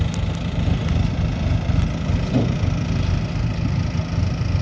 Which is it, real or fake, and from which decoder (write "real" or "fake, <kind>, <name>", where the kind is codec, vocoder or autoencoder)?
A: real